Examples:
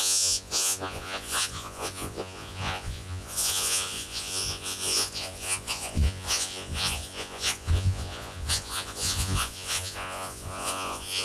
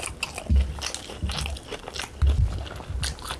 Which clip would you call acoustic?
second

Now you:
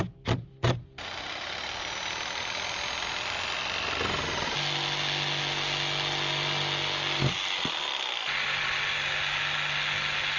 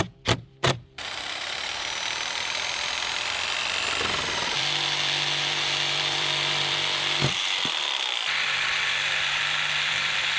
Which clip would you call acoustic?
first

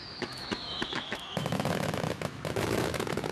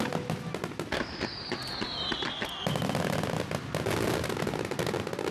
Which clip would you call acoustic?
second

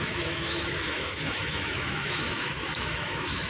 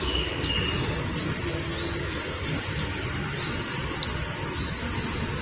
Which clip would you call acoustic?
second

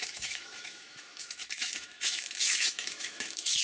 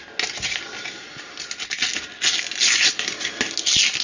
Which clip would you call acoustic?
second